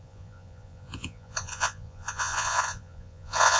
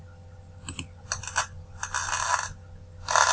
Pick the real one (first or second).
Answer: second